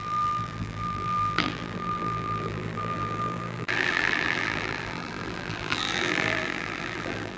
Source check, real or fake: fake